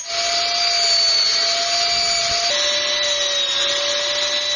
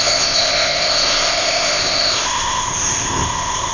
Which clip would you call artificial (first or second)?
second